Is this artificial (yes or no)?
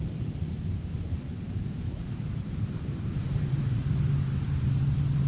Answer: yes